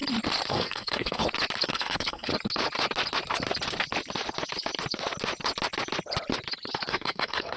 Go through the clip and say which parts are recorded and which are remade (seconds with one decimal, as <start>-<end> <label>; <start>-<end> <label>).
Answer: 0.0-0.5 recorded; 0.5-1.2 remade; 1.2-1.7 recorded; 1.7-2.3 remade; 2.3-6.9 recorded; 6.9-7.6 remade